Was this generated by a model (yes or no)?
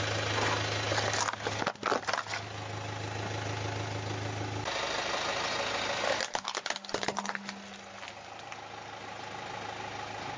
no